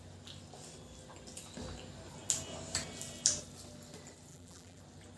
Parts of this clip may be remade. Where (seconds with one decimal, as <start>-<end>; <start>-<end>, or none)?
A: 4.3-4.8